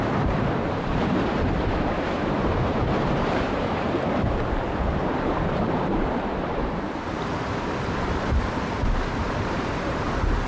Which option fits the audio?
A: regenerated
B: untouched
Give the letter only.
A